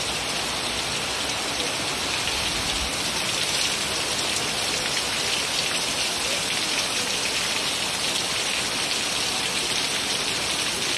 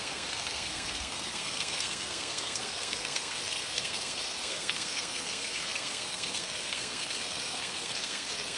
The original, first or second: first